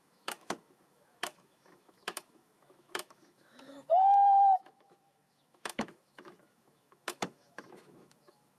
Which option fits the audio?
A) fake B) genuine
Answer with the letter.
A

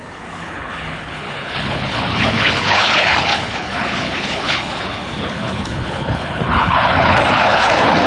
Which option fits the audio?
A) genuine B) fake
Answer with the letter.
B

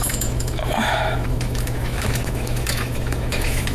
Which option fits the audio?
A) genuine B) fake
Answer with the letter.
B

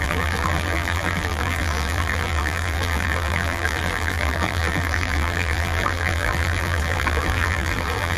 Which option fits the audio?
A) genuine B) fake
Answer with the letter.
B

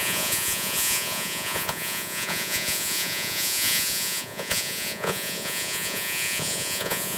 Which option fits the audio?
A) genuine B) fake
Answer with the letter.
B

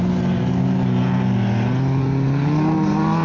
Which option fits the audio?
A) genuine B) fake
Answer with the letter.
A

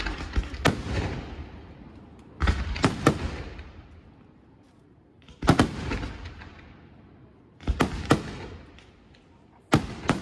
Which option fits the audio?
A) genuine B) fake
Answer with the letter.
A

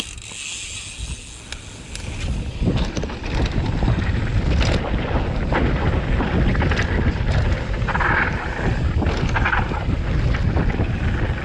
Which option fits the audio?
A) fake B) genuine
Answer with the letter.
B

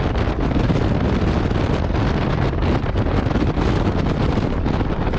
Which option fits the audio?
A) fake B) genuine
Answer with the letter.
B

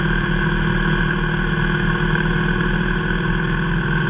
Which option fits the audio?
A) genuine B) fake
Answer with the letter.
A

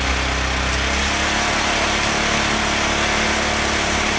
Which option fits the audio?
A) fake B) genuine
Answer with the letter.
B